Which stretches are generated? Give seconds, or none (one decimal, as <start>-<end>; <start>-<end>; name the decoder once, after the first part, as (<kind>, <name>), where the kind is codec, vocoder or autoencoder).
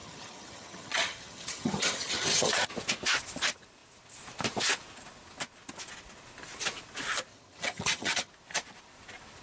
0.0-2.7 (vocoder, HiFi-GAN); 7.3-8.3